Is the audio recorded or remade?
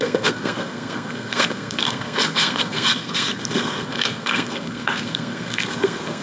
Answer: remade